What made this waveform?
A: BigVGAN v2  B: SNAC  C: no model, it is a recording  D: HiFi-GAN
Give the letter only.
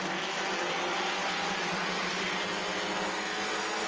C